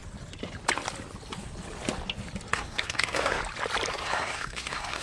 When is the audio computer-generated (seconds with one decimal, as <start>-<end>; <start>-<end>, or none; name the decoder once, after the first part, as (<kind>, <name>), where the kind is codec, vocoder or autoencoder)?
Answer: 2.5-3.4 (codec, SNAC); 3.9-5.0